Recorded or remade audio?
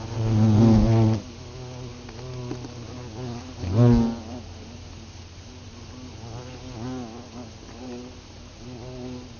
recorded